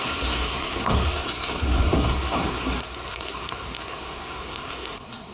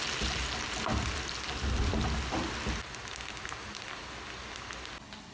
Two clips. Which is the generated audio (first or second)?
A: first